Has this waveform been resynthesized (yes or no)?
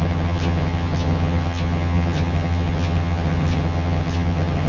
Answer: yes